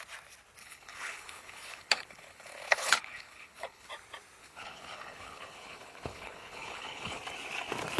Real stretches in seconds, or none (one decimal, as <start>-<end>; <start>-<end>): 0.0-0.6; 3.9-4.4; 7.2-8.0